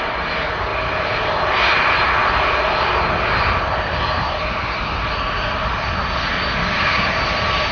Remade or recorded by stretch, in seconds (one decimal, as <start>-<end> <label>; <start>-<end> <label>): 0.0-6.6 recorded; 6.6-7.1 remade; 7.1-7.7 recorded